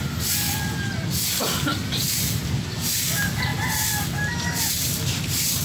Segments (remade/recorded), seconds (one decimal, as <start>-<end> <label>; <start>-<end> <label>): 0.0-1.7 recorded; 1.7-2.3 remade; 2.3-5.6 recorded